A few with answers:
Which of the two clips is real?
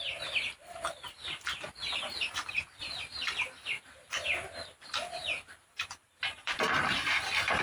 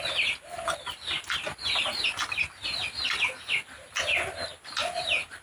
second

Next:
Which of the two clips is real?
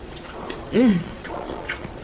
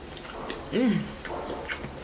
second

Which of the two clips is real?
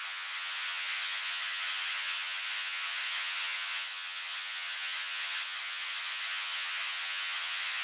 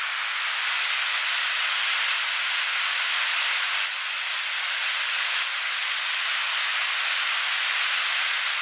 second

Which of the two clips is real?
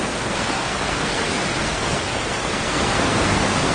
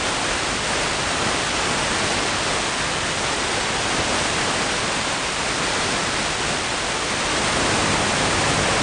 second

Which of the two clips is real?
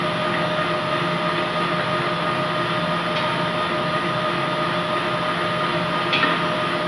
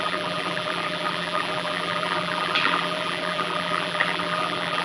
first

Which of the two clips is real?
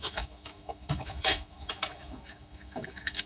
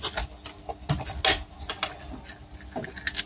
second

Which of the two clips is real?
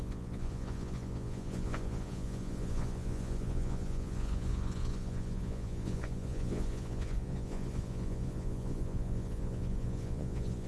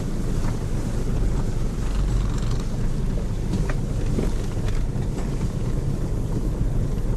second